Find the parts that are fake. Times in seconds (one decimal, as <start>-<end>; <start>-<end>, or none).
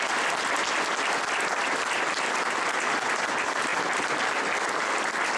none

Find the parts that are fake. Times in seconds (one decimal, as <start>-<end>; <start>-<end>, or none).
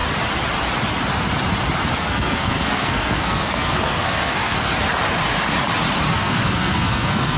2.0-4.7; 6.1-7.4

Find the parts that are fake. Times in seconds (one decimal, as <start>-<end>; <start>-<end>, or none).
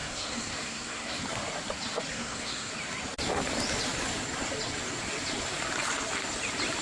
0.0-1.2; 2.1-2.7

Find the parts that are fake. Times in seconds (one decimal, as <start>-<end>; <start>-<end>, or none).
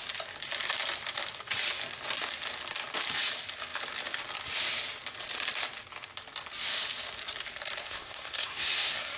7.8-9.2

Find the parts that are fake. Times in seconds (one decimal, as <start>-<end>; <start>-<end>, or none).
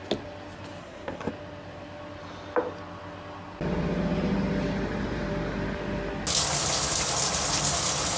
0.8-1.3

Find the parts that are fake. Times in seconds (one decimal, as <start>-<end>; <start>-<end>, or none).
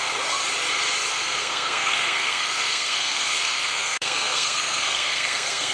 0.0-0.4; 1.1-5.7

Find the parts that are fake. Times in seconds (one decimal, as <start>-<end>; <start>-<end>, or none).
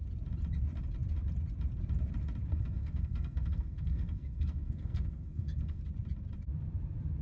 2.5-5.8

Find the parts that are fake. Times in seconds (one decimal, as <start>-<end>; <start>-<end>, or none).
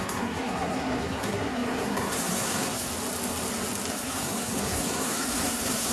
0.0-2.9; 3.9-5.9